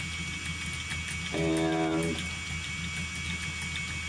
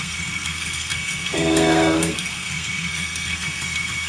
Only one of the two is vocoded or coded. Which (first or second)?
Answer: second